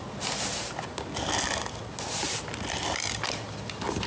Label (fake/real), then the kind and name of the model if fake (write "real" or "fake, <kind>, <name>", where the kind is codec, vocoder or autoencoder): real